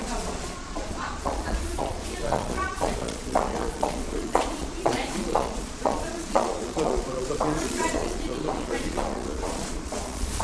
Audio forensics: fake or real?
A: fake